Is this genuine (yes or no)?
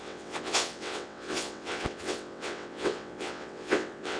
no